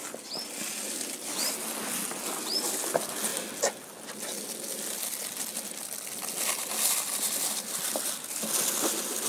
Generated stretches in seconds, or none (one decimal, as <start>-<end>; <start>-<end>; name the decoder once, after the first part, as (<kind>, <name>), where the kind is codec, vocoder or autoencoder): none